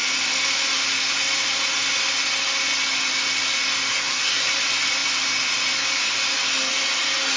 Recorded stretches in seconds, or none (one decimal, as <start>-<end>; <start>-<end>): 0.0-3.9; 4.5-7.4